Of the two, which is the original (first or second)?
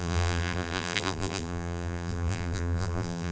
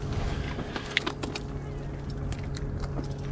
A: second